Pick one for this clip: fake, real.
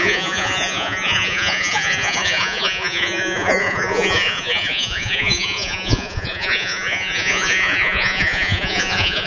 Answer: fake